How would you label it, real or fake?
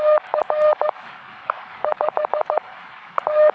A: fake